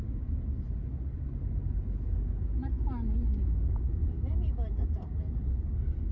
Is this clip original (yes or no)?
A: yes